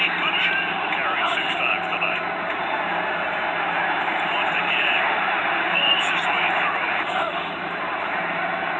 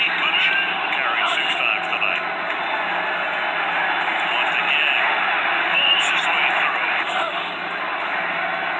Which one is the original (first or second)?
second